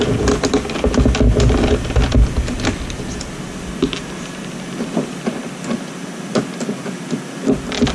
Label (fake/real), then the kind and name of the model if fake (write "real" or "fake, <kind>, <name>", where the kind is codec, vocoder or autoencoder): real